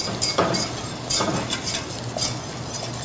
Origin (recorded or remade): recorded